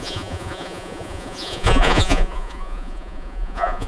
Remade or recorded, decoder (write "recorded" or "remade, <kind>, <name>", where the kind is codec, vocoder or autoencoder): remade, vocoder, Vocos